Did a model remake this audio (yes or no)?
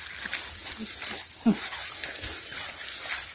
no